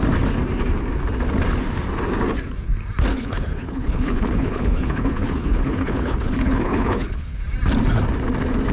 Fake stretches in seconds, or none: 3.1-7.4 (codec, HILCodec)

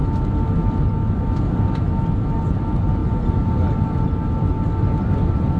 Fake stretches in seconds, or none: none

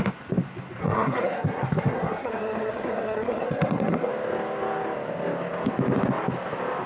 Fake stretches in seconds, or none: 0.8-4.1 (codec, SNAC)

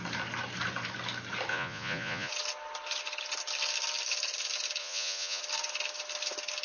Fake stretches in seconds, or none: 1.5-2.3 (vocoder, Vocos); 4.8-5.4

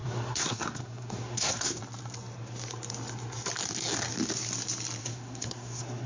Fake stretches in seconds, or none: 0.0-1.8 (codec, SNAC); 5.0-6.1

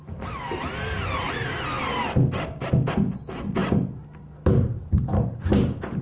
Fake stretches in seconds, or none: none

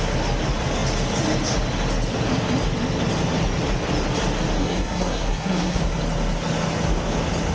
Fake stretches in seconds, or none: 4.6-5.8 (codec, SNAC)

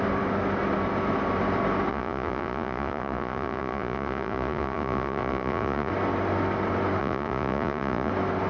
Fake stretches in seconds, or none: 1.9-5.9 (vocoder, Vocos); 7.0-8.1